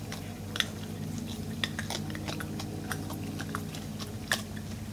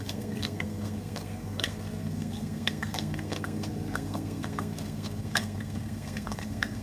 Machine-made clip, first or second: second